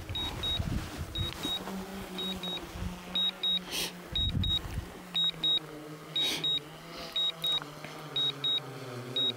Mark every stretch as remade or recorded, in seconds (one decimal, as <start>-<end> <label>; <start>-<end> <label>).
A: 0.0-9.4 recorded